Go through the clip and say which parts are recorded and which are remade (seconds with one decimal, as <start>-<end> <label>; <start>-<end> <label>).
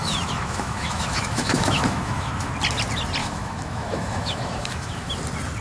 0.0-2.5 remade; 2.5-3.2 recorded; 3.2-5.1 remade; 5.1-5.6 recorded